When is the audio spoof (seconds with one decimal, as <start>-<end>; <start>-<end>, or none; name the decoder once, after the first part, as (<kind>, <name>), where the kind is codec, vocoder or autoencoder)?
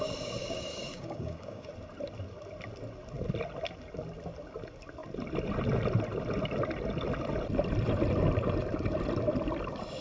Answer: 0.4-1.7 (codec, DAC)